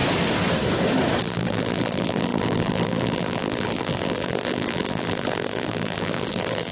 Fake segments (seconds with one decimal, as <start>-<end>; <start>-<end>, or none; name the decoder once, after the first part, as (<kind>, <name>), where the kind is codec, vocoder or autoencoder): 1.2-6.7 (vocoder, BigVGAN v2)